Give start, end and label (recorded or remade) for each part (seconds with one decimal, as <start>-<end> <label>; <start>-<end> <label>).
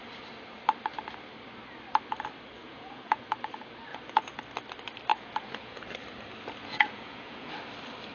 0.0-2.6 recorded; 2.6-3.3 remade; 3.3-3.9 recorded; 3.9-4.4 remade; 4.4-5.1 recorded; 5.1-5.8 remade; 5.8-6.6 recorded; 6.6-7.5 remade; 7.5-8.1 recorded